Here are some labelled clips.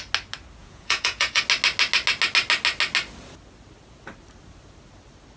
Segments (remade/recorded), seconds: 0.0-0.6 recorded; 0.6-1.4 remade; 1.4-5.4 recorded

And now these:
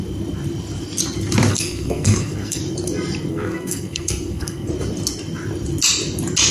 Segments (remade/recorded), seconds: 0.0-1.5 recorded; 1.5-2.6 remade; 2.6-3.3 recorded; 3.3-4.7 remade; 4.7-6.5 recorded